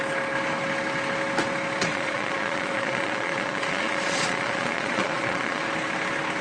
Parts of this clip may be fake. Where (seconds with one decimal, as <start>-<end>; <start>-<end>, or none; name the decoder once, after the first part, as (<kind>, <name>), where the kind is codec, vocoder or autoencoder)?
1.9-5.7 (vocoder, Vocos)